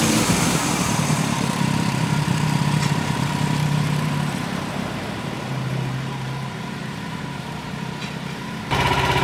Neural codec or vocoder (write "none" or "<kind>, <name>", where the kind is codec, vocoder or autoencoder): vocoder, BigVGAN v2